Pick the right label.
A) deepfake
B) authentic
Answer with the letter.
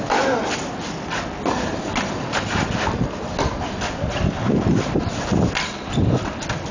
B